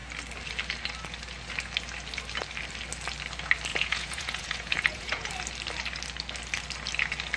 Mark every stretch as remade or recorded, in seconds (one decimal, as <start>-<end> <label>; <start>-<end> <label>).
0.0-3.7 recorded; 3.7-5.3 remade; 5.3-7.4 recorded